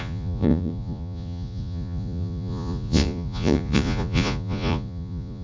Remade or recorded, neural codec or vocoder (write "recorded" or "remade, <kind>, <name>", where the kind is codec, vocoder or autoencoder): remade, vocoder, Vocos